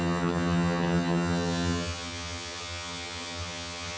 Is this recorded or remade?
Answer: remade